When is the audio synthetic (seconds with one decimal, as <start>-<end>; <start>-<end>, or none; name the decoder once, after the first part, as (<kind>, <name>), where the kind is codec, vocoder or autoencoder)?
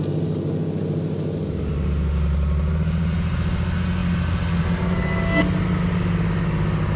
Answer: none